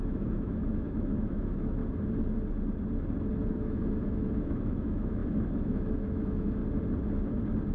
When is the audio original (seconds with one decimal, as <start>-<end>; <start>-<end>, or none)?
1.8-3.5; 6.6-7.7